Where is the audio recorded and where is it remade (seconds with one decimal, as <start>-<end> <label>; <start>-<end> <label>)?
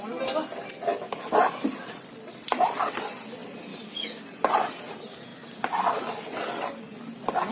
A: 0.0-7.5 recorded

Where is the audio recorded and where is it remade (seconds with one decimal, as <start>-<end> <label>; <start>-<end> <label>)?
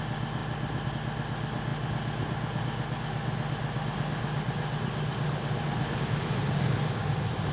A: 0.0-7.5 recorded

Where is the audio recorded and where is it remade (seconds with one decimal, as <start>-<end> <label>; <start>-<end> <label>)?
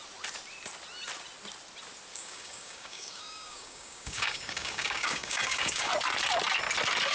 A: 0.0-2.1 recorded; 2.1-5.9 remade; 5.9-7.1 recorded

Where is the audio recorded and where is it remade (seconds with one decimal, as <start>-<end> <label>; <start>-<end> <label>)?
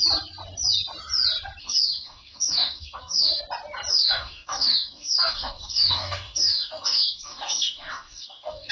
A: 0.0-1.6 recorded; 1.6-3.4 remade; 3.4-3.9 recorded; 3.9-8.7 remade